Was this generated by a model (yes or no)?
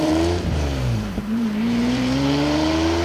yes